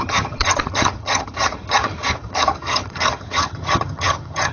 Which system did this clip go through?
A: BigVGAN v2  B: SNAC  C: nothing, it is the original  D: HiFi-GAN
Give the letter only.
D